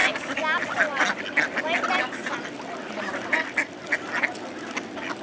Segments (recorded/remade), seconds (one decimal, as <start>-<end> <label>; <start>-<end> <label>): 0.0-5.2 recorded